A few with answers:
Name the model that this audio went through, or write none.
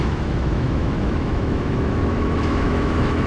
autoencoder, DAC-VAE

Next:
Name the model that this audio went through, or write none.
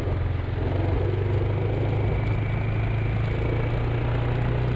none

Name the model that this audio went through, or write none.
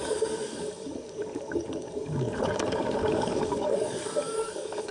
codec, DAC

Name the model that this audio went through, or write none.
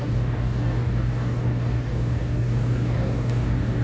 codec, DAC